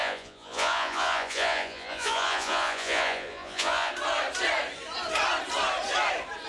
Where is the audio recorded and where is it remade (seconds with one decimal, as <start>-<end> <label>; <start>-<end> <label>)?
0.0-3.9 remade; 3.9-6.5 recorded